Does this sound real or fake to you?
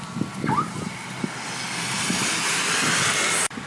real